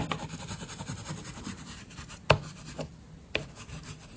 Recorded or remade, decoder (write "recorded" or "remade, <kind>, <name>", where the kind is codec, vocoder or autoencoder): recorded